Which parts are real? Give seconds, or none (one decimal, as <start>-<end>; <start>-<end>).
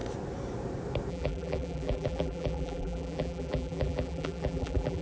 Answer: 0.0-1.1